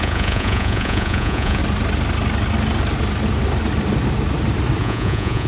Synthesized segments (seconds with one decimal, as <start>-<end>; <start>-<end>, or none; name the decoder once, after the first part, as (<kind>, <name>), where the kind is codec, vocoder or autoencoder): 0.0-1.6 (vocoder, Vocos); 4.8-5.5